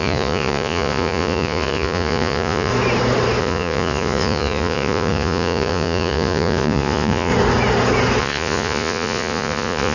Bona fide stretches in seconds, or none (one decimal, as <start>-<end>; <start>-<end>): 2.7-3.4; 7.3-8.2